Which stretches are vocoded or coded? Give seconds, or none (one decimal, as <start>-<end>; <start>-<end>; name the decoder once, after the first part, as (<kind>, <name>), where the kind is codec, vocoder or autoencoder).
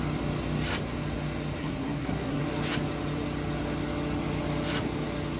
1.6-2.4 (codec, SNAC)